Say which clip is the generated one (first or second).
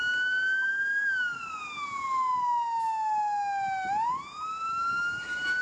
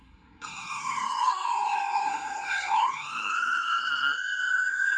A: second